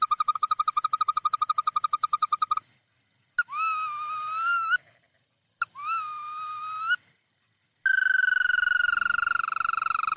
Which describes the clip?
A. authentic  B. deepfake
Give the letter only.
A